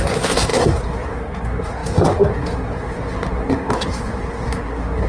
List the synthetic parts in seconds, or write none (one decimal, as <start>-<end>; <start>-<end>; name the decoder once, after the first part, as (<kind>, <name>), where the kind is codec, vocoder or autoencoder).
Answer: 0.0-5.1 (codec, SNAC)